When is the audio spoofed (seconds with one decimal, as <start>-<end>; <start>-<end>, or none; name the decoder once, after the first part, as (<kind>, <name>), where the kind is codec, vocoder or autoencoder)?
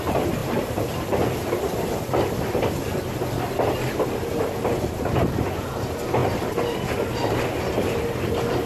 none